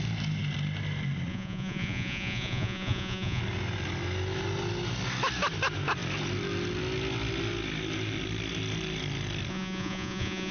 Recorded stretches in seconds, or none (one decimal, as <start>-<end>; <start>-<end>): 0.0-1.3; 3.4-9.5